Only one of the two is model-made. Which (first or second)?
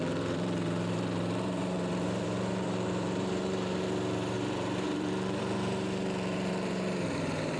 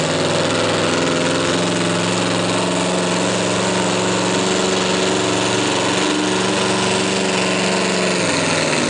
first